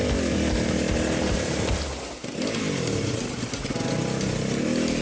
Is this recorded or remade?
recorded